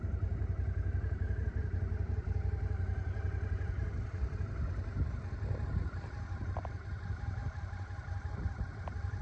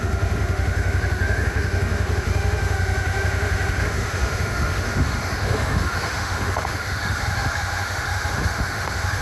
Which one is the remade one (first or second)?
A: second